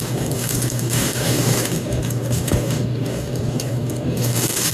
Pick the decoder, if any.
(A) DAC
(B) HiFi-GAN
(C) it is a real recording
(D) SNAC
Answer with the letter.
A